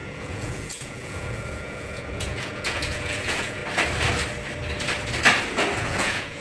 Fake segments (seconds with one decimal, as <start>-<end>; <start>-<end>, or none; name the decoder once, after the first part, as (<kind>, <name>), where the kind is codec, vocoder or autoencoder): 0.0-3.6 (vocoder, Vocos); 5.8-6.4